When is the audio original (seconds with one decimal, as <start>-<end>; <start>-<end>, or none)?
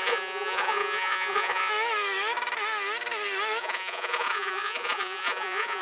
1.7-3.6